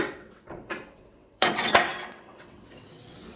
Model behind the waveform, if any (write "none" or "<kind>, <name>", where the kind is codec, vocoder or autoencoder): vocoder, WaveNeXt